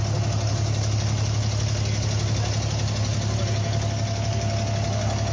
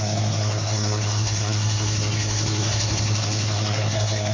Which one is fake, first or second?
second